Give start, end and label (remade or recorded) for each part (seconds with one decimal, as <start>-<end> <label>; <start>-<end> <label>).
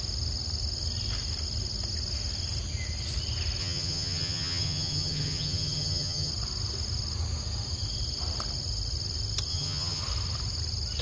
0.0-3.6 recorded; 3.6-6.3 remade; 6.3-9.5 recorded; 9.5-10.0 remade; 10.0-11.0 recorded